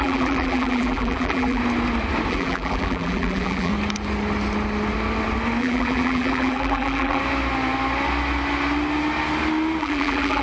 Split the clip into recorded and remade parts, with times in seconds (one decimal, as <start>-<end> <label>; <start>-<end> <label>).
0.0-1.6 remade; 1.6-2.3 recorded; 2.3-3.7 remade; 3.7-5.6 recorded; 5.6-7.2 remade; 7.2-9.8 recorded; 9.8-10.4 remade